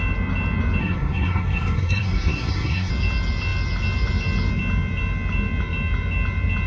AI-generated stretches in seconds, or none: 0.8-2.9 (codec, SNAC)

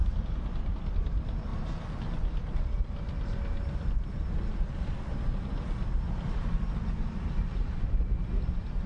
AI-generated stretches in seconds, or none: none

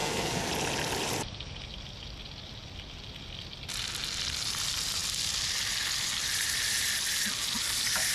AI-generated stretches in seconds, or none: 0.0-0.5 (codec, SNAC)

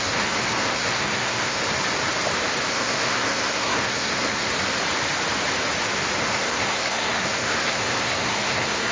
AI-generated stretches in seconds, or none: 0.0-1.6 (codec, SNAC); 2.7-4.5; 6.2-8.9

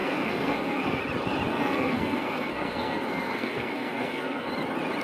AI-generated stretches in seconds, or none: 0.0-1.0 (codec, SNAC); 1.5-4.5